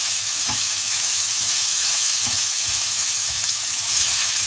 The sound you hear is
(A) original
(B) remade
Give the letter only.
B